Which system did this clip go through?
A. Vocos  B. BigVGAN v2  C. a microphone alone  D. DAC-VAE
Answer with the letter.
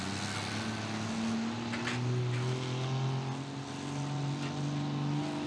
C